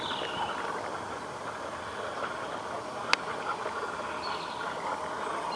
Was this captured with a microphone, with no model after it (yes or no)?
yes